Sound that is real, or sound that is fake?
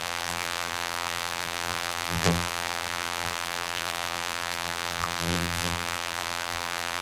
fake